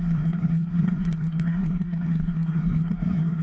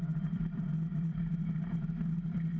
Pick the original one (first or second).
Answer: second